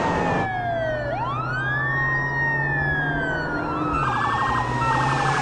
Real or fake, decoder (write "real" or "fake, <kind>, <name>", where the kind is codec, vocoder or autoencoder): real